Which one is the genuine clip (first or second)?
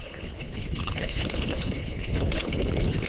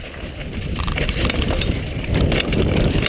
second